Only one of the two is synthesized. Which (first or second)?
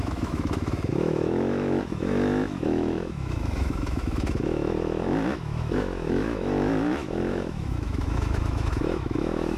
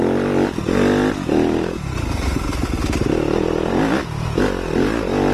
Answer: first